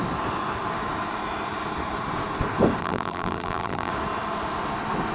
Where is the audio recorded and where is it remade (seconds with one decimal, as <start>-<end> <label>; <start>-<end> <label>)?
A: 0.0-2.8 recorded; 2.8-3.9 remade; 3.9-5.1 recorded